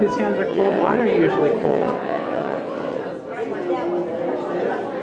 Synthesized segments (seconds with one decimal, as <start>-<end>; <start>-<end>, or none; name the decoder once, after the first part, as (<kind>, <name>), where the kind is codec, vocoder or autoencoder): 0.5-1.0 (vocoder, WaveNeXt); 1.6-3.0